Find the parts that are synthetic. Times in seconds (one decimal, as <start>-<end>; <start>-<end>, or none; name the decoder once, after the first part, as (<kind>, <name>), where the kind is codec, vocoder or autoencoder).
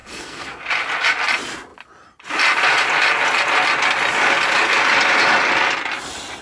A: 0.0-0.6 (codec, SNAC)